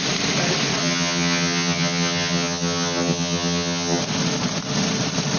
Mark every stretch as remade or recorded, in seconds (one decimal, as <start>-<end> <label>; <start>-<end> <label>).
0.0-0.8 recorded; 0.8-4.0 remade; 4.0-5.4 recorded